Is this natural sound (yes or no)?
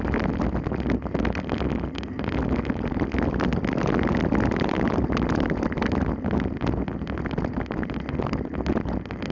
yes